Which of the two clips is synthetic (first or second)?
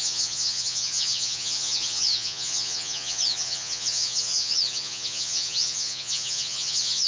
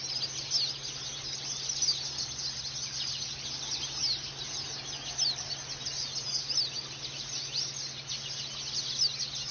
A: first